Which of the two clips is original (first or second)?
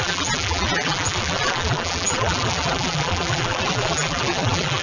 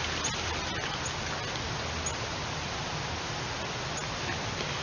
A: second